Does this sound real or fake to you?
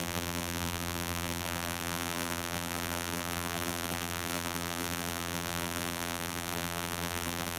fake